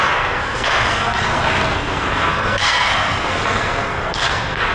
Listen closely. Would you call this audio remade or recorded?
remade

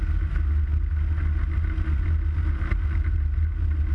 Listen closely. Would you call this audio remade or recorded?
recorded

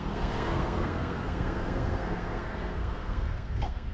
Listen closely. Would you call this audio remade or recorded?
remade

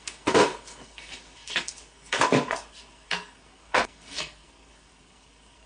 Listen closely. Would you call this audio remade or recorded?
remade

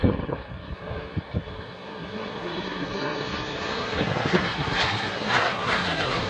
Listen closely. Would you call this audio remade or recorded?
remade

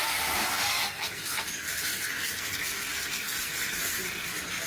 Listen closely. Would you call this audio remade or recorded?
remade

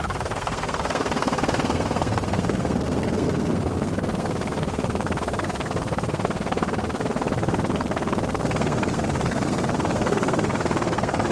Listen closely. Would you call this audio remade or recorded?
remade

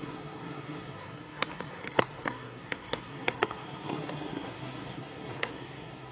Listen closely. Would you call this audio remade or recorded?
remade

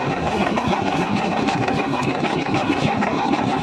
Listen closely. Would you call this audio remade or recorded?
remade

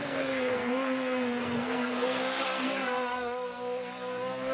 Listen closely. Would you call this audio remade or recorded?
remade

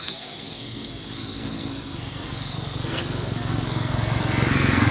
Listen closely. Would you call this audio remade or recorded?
remade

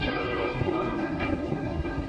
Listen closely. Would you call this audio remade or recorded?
remade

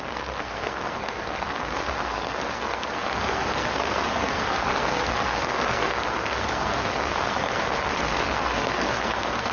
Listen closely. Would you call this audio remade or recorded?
remade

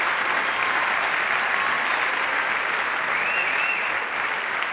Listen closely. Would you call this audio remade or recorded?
recorded